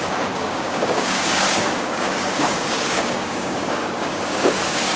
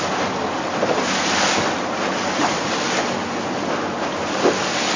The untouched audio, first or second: second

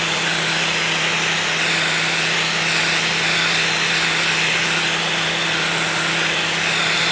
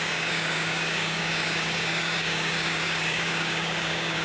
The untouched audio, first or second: first